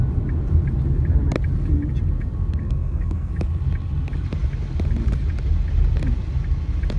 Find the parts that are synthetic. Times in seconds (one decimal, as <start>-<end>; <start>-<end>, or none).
2.6-3.3